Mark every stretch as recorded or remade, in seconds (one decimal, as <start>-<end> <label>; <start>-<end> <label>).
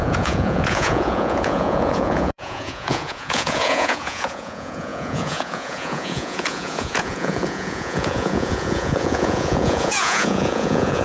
0.0-11.0 remade